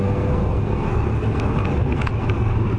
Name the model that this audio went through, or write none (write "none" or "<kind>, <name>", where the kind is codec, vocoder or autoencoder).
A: codec, SNAC